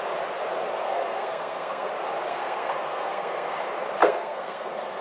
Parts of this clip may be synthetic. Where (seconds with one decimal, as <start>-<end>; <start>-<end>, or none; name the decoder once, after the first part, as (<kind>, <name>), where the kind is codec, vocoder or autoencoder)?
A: 0.7-1.9 (codec, SNAC); 2.3-3.6; 4.0-5.0